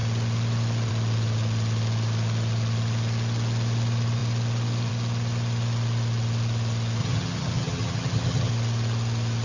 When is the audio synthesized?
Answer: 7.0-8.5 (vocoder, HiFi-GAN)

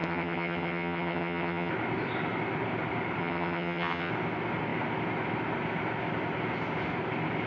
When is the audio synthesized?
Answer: 0.0-1.7 (vocoder, HiFi-GAN); 3.2-4.1

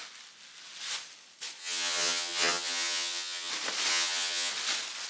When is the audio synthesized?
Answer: 1.6-3.5 (vocoder, HiFi-GAN); 3.9-4.5

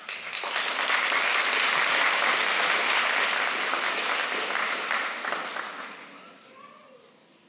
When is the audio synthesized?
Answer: none